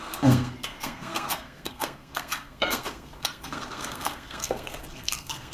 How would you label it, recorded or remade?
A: remade